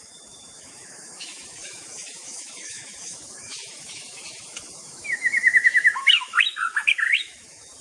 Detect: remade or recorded remade